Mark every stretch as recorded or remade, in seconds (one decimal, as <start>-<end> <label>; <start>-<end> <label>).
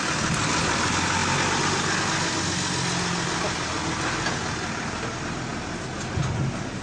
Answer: 0.0-6.8 recorded